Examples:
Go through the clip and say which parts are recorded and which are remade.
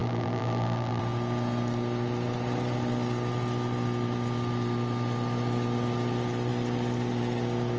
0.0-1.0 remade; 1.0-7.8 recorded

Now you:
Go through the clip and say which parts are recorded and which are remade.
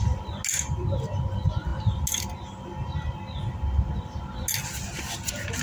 0.0-5.6 recorded